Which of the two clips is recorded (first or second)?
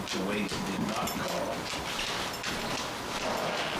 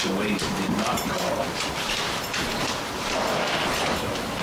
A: first